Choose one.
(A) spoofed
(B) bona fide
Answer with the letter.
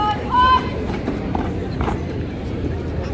A